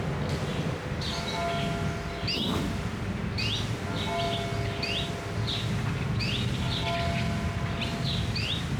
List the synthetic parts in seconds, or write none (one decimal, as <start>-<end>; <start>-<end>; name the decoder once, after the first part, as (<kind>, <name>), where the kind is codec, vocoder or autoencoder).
none